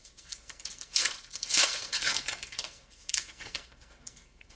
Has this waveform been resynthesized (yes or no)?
yes